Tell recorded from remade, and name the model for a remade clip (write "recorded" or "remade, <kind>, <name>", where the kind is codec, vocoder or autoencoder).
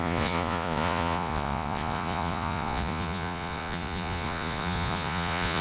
remade, vocoder, Vocos